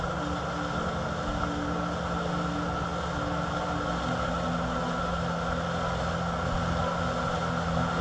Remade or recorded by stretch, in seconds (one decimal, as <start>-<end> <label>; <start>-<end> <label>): 0.0-8.0 recorded